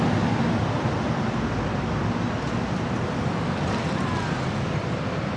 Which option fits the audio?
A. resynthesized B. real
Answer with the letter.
B